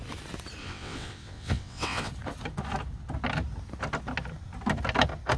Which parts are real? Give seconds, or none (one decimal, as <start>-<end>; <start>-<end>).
0.0-0.6; 2.1-5.4